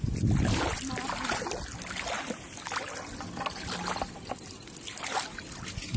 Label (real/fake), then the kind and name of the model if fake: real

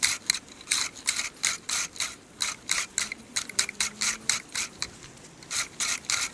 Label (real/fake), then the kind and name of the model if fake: real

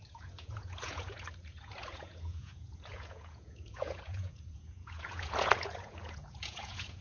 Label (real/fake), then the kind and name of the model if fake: fake, vocoder, Vocos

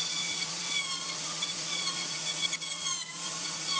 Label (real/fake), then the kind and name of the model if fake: fake, vocoder, Vocos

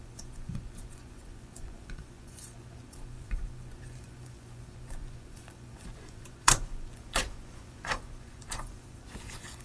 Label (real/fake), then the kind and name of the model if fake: fake, vocoder, Vocos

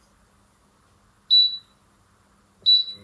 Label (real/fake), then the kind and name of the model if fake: real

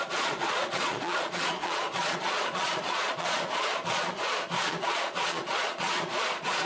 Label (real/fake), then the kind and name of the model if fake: fake, vocoder, Vocos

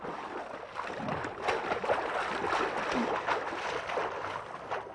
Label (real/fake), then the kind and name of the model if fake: real